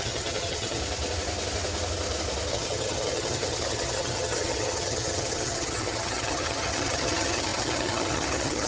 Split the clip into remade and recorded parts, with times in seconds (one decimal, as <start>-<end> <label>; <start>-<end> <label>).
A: 0.0-0.8 remade; 0.8-2.5 recorded; 2.5-8.7 remade